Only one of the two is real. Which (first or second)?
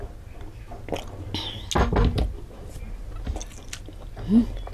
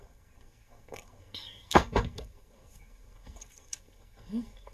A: first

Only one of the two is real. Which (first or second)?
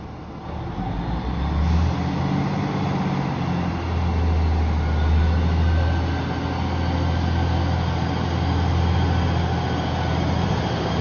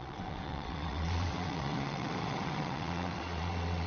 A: first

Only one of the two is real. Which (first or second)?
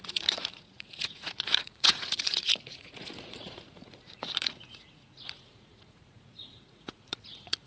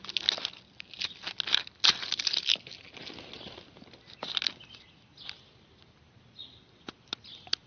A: second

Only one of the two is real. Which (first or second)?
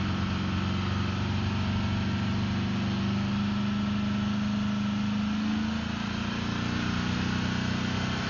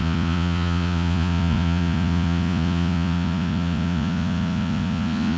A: first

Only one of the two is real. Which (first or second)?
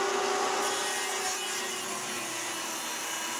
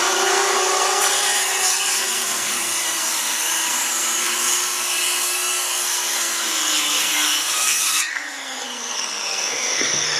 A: first